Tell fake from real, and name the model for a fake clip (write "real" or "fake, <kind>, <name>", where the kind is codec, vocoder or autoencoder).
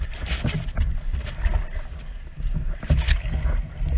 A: real